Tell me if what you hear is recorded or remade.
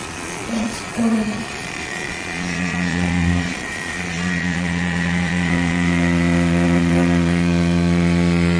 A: remade